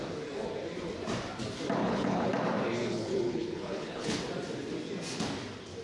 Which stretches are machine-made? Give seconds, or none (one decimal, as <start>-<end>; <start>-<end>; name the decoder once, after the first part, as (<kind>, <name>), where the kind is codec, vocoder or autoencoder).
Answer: 1.8-2.3 (codec, HILCodec); 2.8-4.2